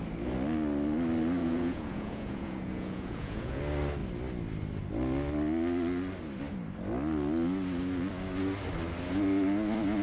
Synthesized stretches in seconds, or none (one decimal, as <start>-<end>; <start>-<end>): 1.4-3.6

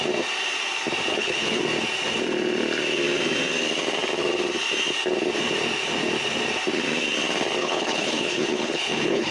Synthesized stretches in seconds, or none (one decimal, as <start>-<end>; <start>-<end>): 1.1-1.6; 7.6-9.3

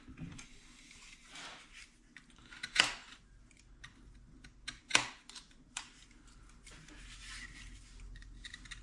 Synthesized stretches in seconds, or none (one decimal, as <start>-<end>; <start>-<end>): none

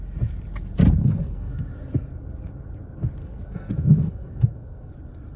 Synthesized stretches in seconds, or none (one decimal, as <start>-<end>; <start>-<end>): 1.0-1.6; 3.2-4.9

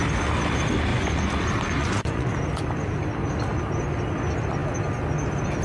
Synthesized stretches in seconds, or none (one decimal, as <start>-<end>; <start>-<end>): 0.9-1.4; 1.8-2.3